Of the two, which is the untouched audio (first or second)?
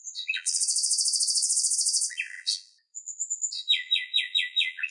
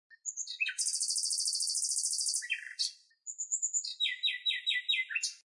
second